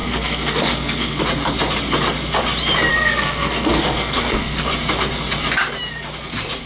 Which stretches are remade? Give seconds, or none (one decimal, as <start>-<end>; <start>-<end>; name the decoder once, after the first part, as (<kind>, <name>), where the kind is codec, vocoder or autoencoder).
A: 0.0-1.2 (codec, SNAC); 2.9-4.7

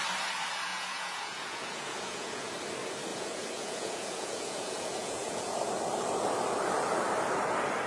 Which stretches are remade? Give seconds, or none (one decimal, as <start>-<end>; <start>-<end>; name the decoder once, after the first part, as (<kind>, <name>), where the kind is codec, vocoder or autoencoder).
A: 0.7-2.5 (vocoder, Vocos); 3.1-5.7

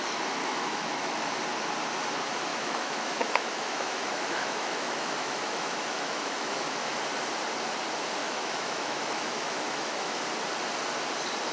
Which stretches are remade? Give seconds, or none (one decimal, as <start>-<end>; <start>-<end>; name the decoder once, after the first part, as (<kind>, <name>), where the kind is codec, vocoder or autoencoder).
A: 0.4-1.4 (autoencoder, DAC-VAE); 2.5-7.0; 8.2-10.2

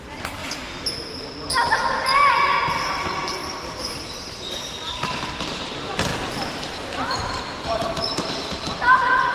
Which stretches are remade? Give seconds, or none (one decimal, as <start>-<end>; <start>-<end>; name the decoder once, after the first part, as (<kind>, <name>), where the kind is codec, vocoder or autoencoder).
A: 0.0-0.4 (vocoder, BigVGAN v2); 2.7-3.4; 3.9-9.3

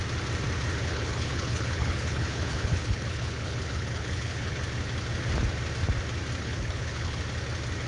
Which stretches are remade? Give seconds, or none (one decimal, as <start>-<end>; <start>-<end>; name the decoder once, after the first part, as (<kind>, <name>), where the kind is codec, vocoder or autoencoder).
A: 0.8-4.6 (codec, HILCodec); 6.4-7.2

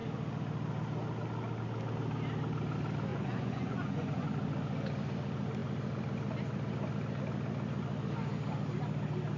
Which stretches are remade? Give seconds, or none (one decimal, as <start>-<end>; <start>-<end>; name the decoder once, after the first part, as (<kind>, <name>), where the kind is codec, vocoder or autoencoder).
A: 3.1-4.3 (vocoder, Vocos)

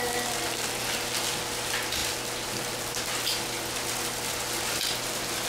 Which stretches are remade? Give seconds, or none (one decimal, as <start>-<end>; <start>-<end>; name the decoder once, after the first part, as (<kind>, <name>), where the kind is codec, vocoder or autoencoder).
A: none

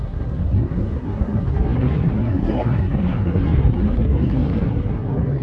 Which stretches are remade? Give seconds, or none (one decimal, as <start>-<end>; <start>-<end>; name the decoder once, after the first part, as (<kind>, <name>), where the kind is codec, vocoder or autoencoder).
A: 0.0-5.4 (codec, SNAC)